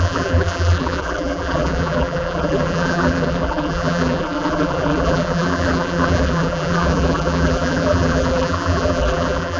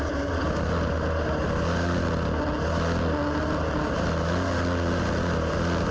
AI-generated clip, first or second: first